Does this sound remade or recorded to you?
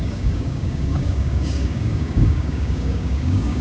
remade